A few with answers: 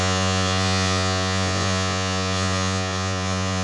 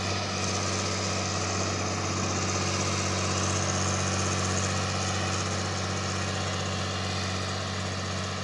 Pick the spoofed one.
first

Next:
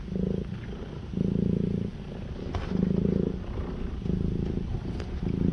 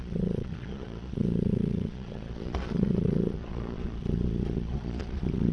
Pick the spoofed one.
second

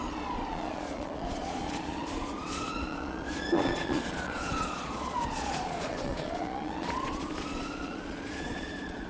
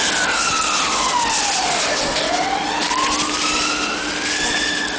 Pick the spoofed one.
first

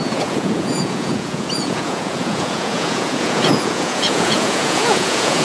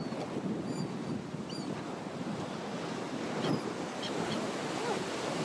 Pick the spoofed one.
first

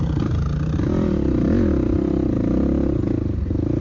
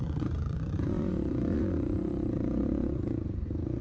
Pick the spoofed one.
second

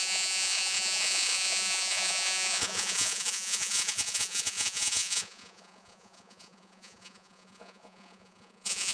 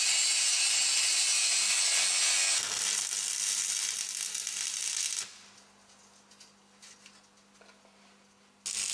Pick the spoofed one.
first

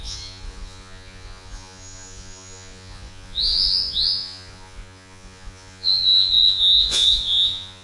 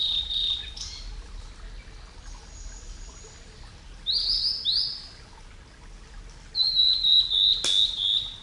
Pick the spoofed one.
first